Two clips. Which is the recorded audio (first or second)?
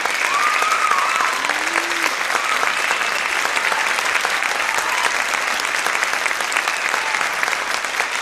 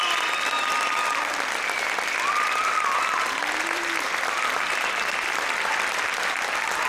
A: first